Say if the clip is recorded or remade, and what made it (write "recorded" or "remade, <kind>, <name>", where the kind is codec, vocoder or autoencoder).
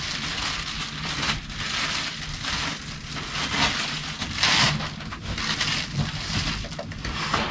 recorded